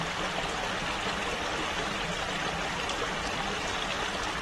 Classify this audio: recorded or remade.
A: recorded